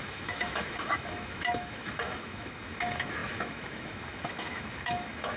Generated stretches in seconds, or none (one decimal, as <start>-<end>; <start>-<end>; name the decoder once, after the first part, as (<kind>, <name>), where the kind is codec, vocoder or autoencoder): 0.0-5.4 (autoencoder, DAC-VAE)